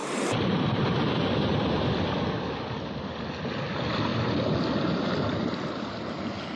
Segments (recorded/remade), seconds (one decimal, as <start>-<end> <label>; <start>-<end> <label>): 0.0-1.9 remade; 1.9-6.6 recorded